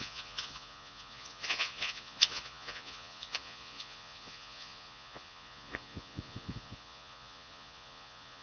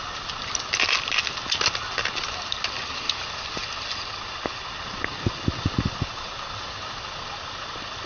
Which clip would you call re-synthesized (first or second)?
first